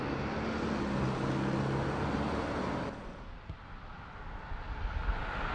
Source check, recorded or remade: recorded